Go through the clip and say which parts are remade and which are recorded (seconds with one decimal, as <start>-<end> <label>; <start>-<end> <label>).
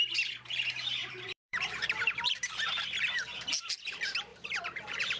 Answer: 0.0-1.0 recorded; 1.0-2.8 remade; 2.8-4.3 recorded; 4.3-5.2 remade